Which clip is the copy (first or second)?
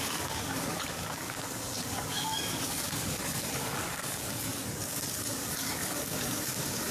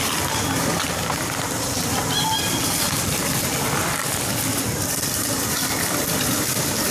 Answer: first